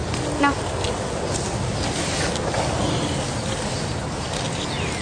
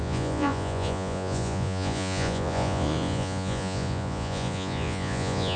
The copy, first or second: second